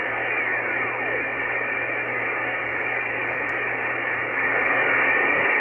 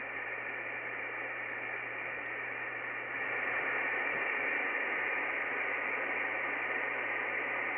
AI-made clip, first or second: first